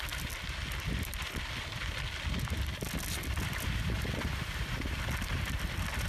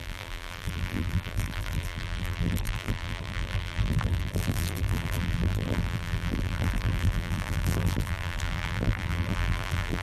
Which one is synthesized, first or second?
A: second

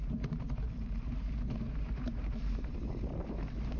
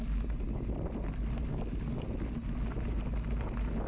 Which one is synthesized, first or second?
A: first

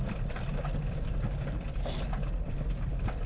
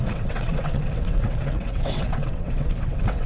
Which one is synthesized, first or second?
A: second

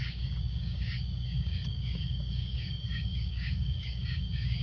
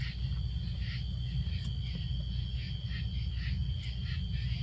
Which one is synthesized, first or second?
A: first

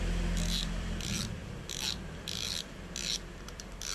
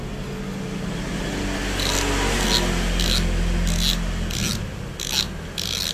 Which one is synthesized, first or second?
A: first